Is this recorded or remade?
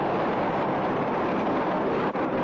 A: recorded